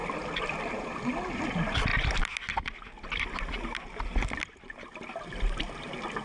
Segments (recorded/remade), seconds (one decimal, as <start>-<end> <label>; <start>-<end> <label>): 0.0-6.2 recorded